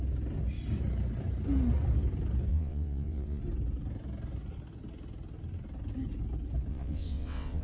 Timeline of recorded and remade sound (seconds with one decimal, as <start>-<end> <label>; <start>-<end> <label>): 0.0-2.5 recorded; 2.5-3.4 remade; 3.4-6.7 recorded; 6.7-7.6 remade